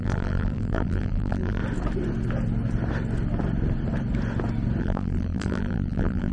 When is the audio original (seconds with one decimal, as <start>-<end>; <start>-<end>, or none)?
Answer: 1.6-4.8